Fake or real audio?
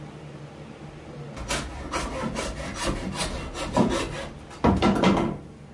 real